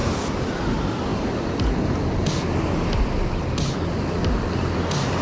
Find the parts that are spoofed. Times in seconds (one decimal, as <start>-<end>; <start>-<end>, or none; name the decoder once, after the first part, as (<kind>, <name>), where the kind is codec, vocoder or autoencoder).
none